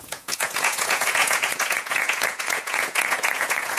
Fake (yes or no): yes